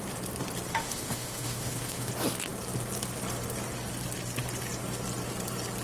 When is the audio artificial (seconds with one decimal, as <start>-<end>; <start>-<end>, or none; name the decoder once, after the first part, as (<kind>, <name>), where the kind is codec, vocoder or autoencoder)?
0.7-2.1 (autoencoder, DAC-VAE)